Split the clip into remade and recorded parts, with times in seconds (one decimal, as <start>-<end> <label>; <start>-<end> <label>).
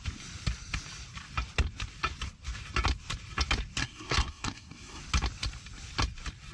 0.0-3.8 recorded; 3.8-5.0 remade; 5.0-6.5 recorded